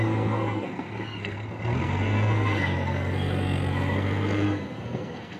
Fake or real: fake